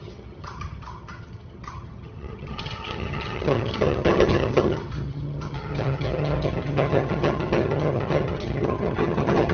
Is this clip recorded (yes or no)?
no